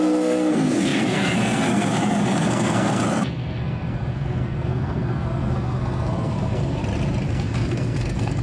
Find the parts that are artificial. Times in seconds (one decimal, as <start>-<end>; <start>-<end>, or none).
0.0-6.8; 7.3-8.4